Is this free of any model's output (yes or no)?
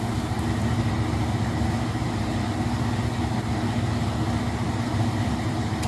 yes